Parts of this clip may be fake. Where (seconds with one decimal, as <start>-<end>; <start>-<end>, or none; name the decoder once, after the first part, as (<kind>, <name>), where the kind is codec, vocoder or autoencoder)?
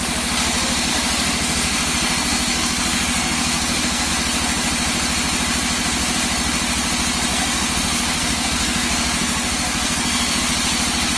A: 0.9-4.1 (codec, SNAC); 7.3-10.4